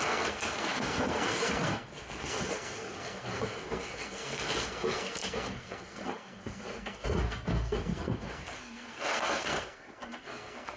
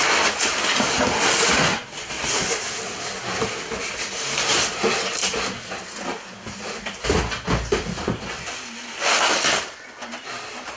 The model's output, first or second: first